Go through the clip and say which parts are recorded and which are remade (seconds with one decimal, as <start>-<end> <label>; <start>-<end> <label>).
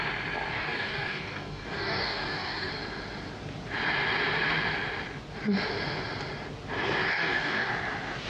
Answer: 0.0-0.5 recorded; 0.5-2.7 remade; 2.7-7.1 recorded; 7.1-7.7 remade; 7.7-8.3 recorded